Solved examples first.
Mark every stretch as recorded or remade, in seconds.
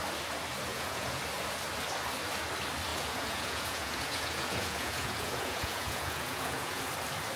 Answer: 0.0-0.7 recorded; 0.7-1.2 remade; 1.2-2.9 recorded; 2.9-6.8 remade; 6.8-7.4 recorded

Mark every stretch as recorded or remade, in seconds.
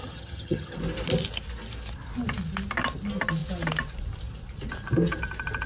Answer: 0.0-0.8 remade; 0.8-5.7 recorded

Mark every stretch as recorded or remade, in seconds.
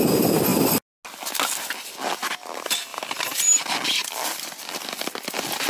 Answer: 0.0-2.9 recorded; 2.9-3.6 remade; 3.6-4.0 recorded; 4.0-5.0 remade; 5.0-5.7 recorded